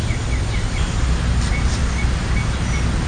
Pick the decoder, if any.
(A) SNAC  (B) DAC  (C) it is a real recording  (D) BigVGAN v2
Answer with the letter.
C